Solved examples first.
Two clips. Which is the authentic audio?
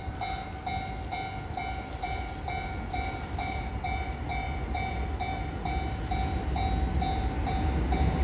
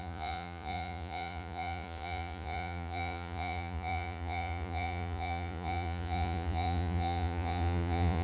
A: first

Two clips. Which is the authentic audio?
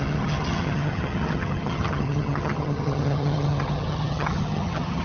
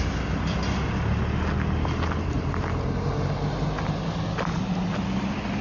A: second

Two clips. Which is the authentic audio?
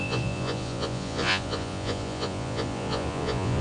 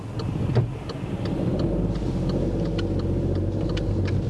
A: second